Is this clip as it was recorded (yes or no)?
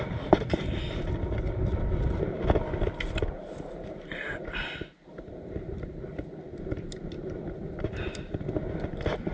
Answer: yes